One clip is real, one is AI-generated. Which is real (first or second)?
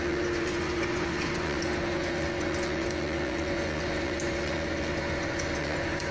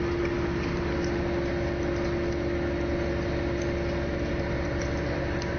second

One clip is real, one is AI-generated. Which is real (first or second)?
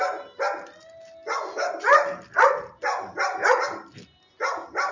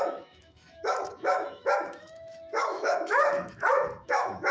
first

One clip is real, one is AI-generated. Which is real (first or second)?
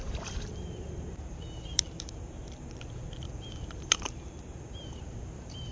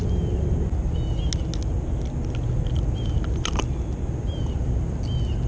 second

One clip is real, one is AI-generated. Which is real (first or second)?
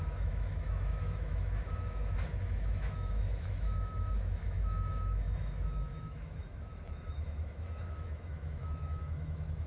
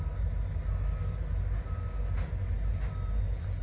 second